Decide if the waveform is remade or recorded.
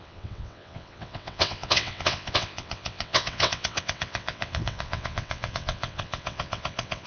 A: remade